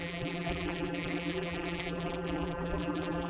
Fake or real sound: fake